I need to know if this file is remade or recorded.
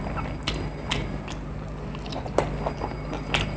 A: recorded